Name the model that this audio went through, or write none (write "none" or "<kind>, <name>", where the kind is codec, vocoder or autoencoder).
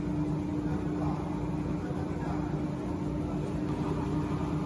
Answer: none